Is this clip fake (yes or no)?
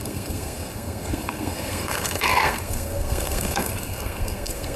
yes